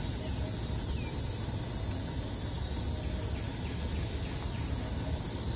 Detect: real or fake real